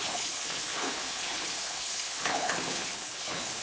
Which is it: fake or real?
fake